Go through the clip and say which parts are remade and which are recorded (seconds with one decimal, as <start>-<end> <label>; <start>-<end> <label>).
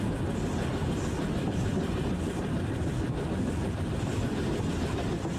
0.0-0.6 recorded; 0.6-3.8 remade; 3.8-5.4 recorded